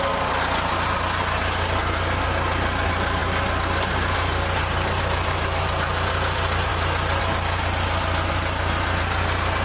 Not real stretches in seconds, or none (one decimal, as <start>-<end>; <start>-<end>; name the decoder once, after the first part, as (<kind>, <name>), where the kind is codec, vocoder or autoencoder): none

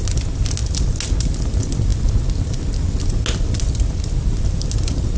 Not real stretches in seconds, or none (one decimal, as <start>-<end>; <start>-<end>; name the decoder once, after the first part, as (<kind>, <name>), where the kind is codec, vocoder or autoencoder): none

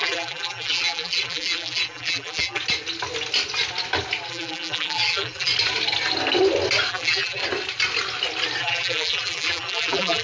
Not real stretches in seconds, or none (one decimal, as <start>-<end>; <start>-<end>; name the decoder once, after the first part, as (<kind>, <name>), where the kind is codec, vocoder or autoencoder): 0.0-2.6 (vocoder, BigVGAN v2); 4.3-5.5; 6.9-7.4; 8.6-10.2

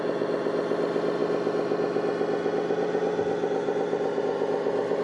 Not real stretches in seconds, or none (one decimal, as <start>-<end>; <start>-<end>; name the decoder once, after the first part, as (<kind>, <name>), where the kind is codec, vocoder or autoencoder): none

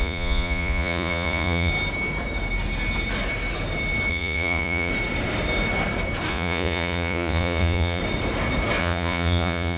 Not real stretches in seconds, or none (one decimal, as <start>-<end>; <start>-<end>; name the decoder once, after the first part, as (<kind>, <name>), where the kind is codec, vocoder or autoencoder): 0.0-1.7 (vocoder, Vocos); 4.1-4.9; 6.3-8.0; 8.8-9.8

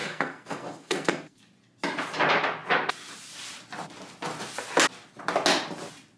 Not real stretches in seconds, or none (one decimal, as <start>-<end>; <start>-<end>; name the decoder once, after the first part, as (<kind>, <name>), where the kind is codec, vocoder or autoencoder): 0.0-1.4 (codec, SNAC)

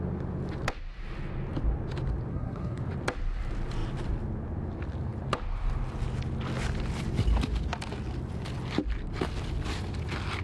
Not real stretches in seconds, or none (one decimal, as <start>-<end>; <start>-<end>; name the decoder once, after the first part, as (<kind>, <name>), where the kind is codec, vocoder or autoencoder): 2.3-2.8 (codec, SNAC)

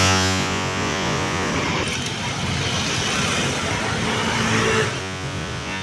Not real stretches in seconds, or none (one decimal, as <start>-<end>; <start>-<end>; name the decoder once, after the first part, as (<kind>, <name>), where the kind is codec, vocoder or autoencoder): 0.0-1.5 (vocoder, Vocos); 5.0-5.8